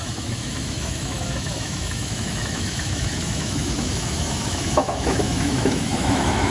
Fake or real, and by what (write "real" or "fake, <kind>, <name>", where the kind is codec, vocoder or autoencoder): fake, autoencoder, DAC-VAE